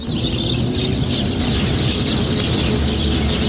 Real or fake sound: real